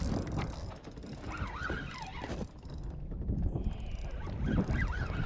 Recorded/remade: recorded